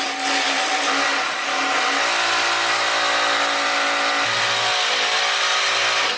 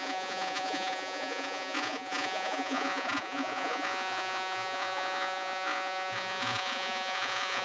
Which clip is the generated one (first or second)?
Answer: second